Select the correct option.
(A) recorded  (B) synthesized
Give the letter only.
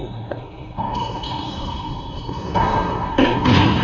B